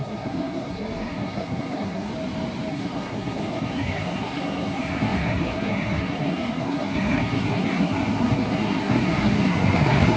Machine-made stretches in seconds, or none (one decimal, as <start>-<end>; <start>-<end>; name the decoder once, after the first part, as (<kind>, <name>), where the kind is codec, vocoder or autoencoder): 0.0-2.1 (codec, SNAC); 2.7-10.2